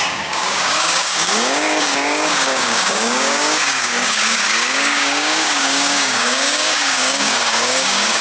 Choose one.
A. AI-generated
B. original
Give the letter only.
A